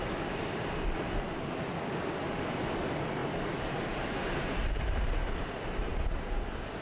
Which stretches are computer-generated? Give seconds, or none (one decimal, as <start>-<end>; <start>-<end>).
none